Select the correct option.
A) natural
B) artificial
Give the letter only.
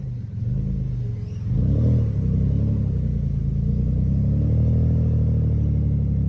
A